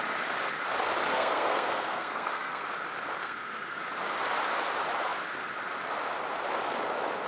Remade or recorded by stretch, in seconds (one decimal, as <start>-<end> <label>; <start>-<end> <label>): 0.0-1.1 recorded; 1.1-2.7 remade; 2.7-3.2 recorded; 3.2-3.8 remade; 3.8-7.3 recorded